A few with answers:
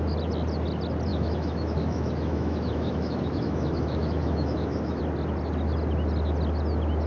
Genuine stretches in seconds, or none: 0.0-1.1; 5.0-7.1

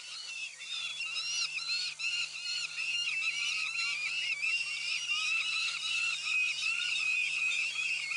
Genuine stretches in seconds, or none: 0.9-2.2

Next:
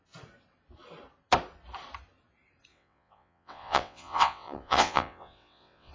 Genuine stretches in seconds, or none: 0.0-2.7

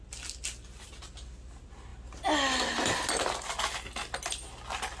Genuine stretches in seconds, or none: 0.0-5.0

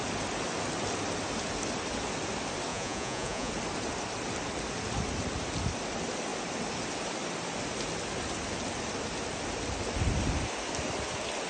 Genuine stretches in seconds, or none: 0.0-2.7; 3.5-11.5

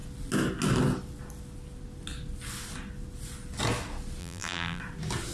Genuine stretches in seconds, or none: 0.0-4.2; 4.8-5.3

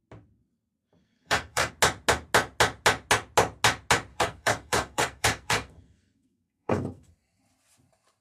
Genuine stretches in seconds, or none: 0.0-1.0; 1.7-4.1; 7.4-8.2

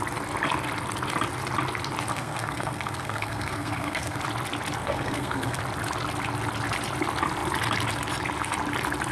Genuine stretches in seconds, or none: 0.0-2.1; 4.2-4.8; 5.6-9.1